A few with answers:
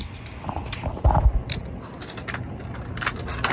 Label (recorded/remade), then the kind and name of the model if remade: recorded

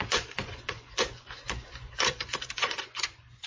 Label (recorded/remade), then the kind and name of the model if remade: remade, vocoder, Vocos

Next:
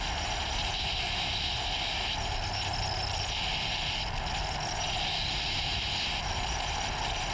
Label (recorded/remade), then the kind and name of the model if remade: recorded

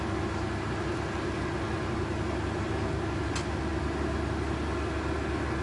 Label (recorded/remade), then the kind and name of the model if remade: recorded